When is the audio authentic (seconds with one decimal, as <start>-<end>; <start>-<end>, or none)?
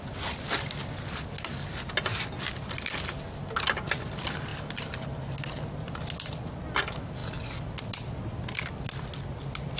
0.0-9.8